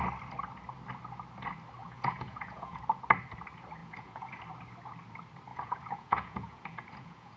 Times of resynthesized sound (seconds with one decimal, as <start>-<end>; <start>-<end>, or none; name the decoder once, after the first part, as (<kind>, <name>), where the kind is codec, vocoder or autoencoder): 1.8-2.8 (vocoder, Vocos); 3.8-4.4; 5.5-7.4